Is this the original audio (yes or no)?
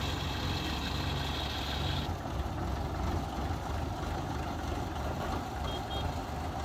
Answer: yes